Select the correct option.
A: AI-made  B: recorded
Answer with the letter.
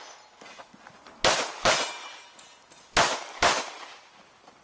B